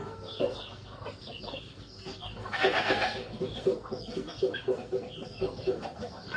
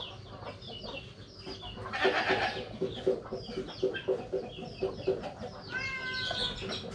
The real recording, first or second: second